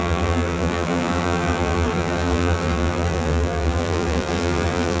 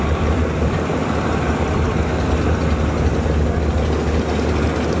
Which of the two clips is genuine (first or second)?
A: second